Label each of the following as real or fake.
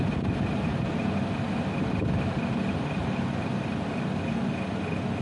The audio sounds real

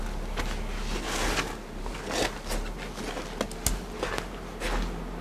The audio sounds real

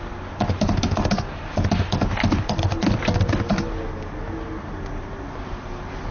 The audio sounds real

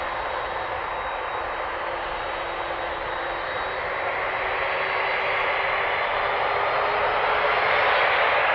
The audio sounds real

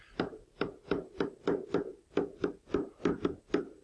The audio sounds real